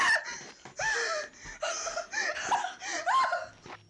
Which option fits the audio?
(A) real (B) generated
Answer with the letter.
A